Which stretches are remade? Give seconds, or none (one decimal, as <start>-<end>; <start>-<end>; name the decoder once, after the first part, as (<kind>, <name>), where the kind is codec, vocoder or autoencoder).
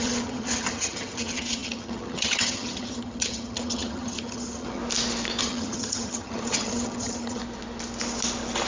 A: 0.0-4.8 (vocoder, HiFi-GAN); 5.4-7.4